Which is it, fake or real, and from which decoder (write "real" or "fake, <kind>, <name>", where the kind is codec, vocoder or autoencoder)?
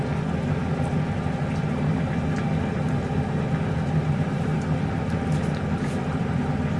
real